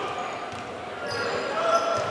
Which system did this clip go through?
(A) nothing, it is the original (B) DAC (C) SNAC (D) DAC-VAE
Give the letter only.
A